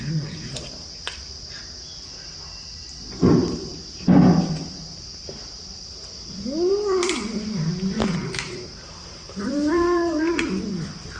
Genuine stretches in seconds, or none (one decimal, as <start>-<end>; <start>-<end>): 0.0-8.2; 10.5-11.2